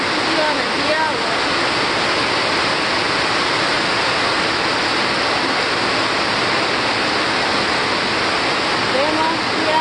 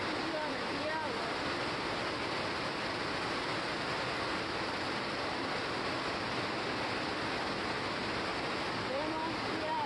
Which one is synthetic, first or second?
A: second